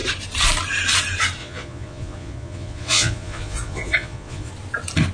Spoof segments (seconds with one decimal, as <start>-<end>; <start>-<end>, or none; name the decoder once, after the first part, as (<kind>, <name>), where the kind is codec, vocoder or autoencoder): 1.4-4.5 (vocoder, Vocos)